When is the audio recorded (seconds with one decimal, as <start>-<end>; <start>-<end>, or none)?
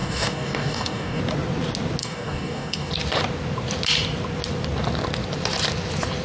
1.2-2.0; 2.9-6.2